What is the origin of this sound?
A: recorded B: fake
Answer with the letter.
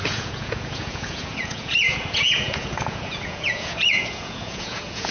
B